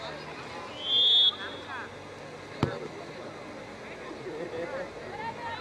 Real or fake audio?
real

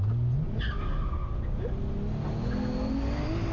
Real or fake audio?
real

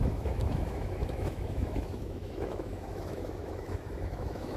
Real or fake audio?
fake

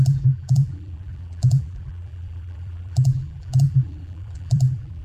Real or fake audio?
fake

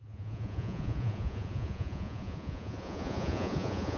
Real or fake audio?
fake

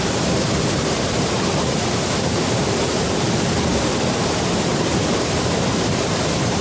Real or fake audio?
fake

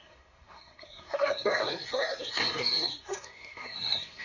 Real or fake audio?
fake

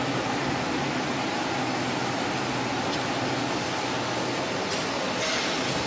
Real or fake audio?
real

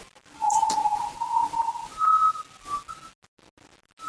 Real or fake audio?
real